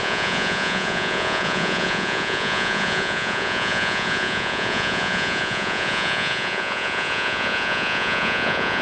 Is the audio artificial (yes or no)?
yes